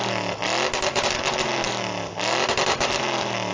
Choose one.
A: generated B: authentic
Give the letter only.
B